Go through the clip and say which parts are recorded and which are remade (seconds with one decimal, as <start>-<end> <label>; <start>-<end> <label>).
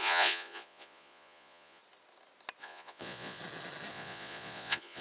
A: 0.0-1.8 remade; 1.8-2.6 recorded; 2.6-3.4 remade; 3.4-3.9 recorded; 3.9-5.0 remade